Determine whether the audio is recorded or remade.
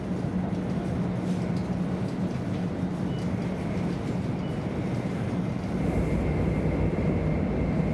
recorded